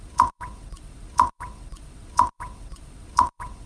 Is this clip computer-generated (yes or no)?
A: yes